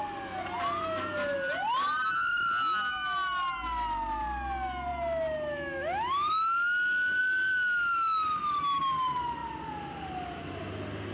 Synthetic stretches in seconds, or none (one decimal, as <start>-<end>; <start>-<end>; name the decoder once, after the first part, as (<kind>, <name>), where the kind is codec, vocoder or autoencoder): none